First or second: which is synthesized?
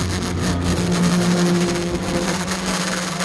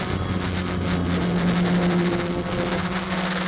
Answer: first